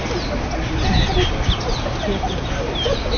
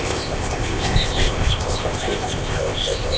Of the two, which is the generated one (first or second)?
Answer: second